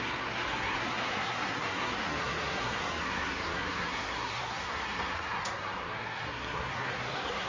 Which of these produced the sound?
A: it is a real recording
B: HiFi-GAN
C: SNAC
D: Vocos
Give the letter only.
C